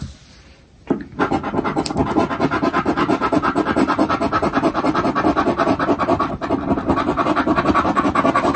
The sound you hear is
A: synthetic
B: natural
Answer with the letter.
B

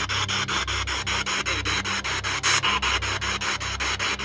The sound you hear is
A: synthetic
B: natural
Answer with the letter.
B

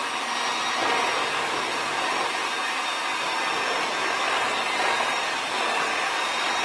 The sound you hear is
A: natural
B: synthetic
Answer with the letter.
A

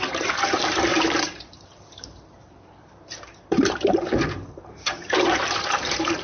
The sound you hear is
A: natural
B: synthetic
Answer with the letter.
B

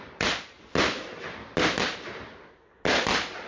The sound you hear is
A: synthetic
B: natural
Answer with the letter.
B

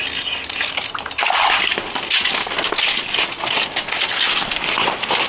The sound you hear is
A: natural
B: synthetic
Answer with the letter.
A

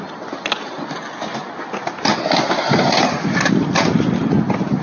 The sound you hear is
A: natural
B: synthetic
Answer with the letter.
A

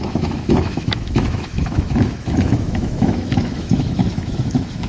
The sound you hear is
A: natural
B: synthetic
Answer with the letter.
B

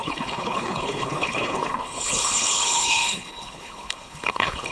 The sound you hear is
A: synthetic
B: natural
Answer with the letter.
A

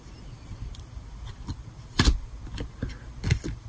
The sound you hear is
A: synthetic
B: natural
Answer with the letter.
B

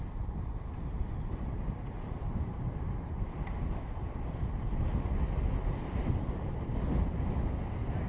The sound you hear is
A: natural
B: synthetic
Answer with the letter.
A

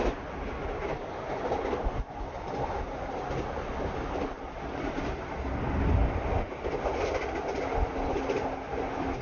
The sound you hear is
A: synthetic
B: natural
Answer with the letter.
B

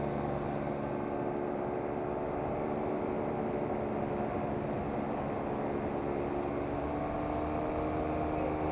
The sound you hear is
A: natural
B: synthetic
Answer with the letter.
A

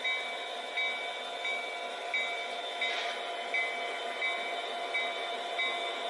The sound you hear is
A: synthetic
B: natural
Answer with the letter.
B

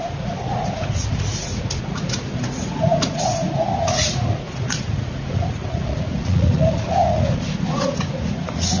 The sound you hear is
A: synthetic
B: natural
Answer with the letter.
A